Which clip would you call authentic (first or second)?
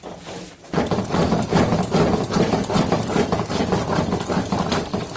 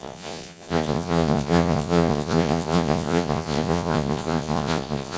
first